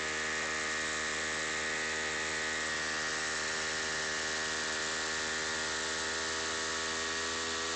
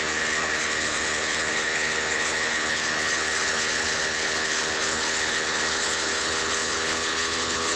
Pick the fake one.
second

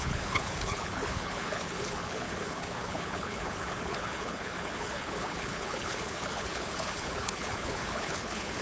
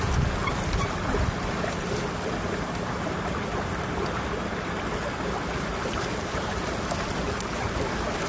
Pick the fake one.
first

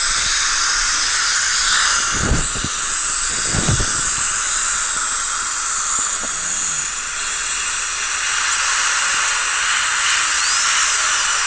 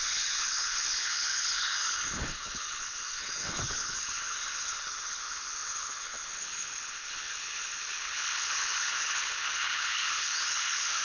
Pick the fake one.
second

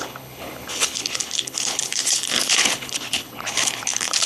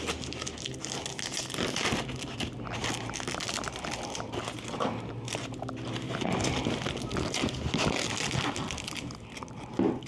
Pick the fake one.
first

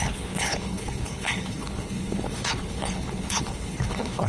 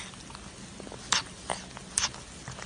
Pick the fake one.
first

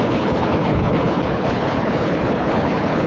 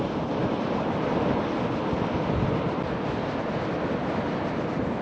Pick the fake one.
first